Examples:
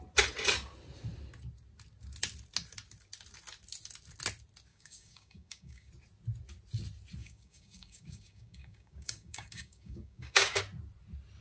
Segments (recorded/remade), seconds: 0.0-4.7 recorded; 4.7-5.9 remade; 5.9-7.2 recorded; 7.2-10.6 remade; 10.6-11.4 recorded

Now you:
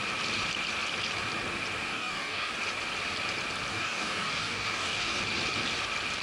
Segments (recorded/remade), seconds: 0.0-1.9 recorded; 1.9-2.5 remade; 2.5-3.7 recorded; 3.7-5.2 remade; 5.2-6.2 recorded

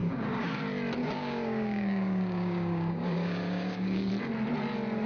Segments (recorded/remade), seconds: 0.0-0.6 remade; 0.6-1.0 recorded; 1.0-4.1 remade; 4.1-5.1 recorded

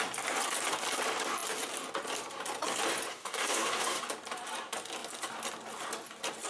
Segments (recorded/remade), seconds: 0.0-3.1 recorded; 3.1-4.0 remade; 4.0-6.5 recorded

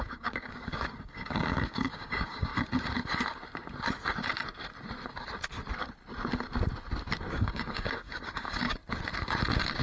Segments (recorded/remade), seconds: 0.0-2.5 remade; 2.5-7.3 recorded; 7.3-8.8 remade; 8.8-9.8 recorded

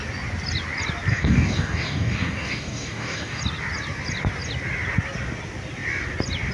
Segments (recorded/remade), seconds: 0.0-1.1 recorded; 1.1-3.4 remade; 3.4-6.5 recorded

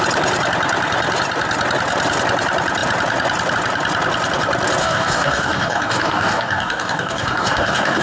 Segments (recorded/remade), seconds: 0.0-4.8 recorded; 4.8-8.0 remade

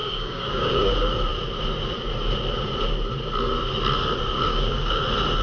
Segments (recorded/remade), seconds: 0.0-0.9 remade; 0.9-4.5 recorded; 4.5-5.0 remade; 5.0-5.4 recorded